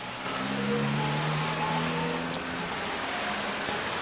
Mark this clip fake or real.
real